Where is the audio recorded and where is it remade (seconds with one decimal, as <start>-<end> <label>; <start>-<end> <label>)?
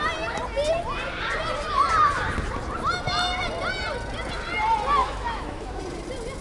0.0-5.0 recorded; 5.0-5.8 remade; 5.8-6.4 recorded